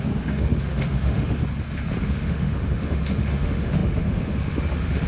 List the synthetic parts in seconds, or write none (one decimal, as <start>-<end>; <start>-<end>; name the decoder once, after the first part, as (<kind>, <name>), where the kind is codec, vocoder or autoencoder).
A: 0.0-1.4 (autoencoder, DAC-VAE); 2.0-5.1